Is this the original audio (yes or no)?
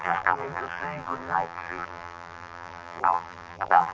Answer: no